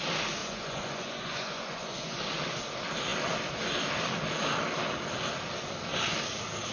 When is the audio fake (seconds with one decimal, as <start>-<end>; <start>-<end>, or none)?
0.4-2.2